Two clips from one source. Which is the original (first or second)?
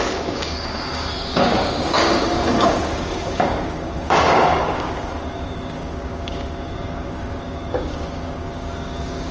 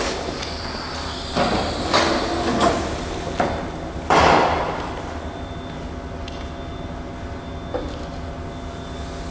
second